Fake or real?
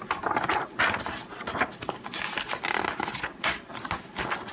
real